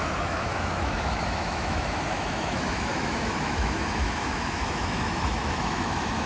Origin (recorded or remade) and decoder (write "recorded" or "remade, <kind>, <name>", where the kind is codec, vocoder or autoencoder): remade, autoencoder, DAC-VAE